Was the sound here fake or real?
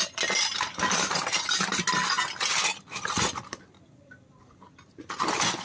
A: real